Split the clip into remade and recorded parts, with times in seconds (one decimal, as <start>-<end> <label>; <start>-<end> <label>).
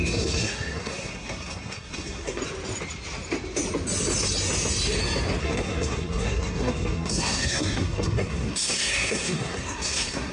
0.0-2.4 remade; 2.4-5.4 recorded; 5.4-10.3 remade